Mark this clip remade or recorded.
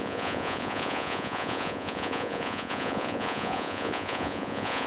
remade